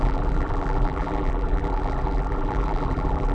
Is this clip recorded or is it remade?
remade